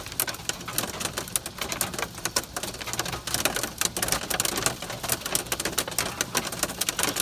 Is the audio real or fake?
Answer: real